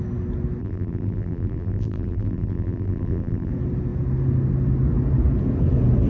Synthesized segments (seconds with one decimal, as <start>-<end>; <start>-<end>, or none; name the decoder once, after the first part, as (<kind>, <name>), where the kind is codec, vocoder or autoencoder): 0.6-3.5 (vocoder, BigVGAN v2)